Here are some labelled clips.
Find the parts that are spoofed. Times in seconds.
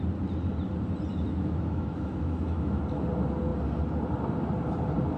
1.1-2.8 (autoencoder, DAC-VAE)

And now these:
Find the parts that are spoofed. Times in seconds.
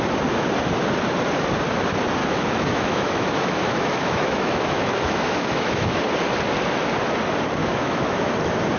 2.2-6.0 (autoencoder, DAC-VAE); 7.6-8.3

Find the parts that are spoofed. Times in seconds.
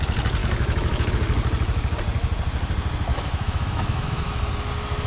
0.4-1.1 (autoencoder, DAC-VAE); 3.1-4.4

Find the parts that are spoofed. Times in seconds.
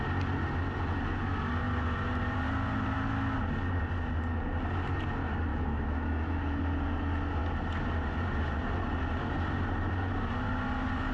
5.5-6.6 (autoencoder, DAC-VAE)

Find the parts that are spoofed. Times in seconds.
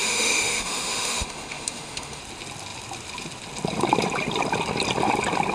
0.0-2.2 (autoencoder, DAC-VAE)